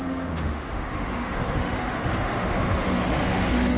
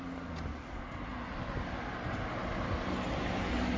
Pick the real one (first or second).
second